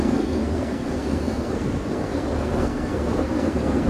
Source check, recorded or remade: remade